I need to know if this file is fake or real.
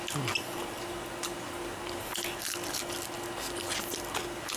real